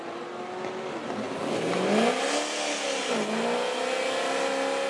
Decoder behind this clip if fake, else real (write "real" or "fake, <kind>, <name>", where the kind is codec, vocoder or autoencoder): real